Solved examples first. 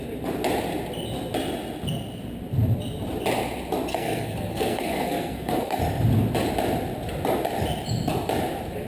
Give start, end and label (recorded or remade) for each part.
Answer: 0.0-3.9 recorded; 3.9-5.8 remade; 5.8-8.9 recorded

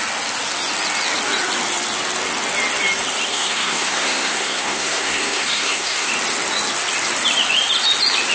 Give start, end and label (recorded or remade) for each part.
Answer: 0.0-3.3 recorded; 3.3-6.1 remade; 6.1-8.3 recorded

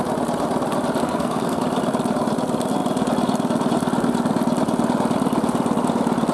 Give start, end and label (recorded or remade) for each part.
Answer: 0.0-1.0 recorded; 1.0-1.6 remade; 1.6-6.3 recorded

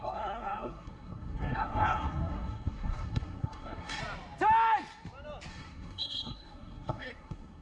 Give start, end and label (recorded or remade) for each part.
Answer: 0.0-4.0 remade; 4.0-5.5 recorded; 5.5-7.6 remade

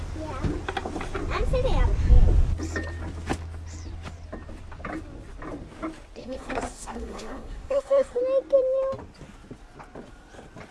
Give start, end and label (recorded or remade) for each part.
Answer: 0.0-6.2 recorded; 6.2-8.2 remade; 8.2-10.7 recorded